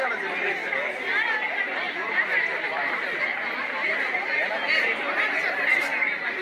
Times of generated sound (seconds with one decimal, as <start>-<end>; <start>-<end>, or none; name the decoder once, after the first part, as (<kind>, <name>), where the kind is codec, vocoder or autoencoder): 0.6-1.9 (vocoder, BigVGAN v2); 2.3-6.4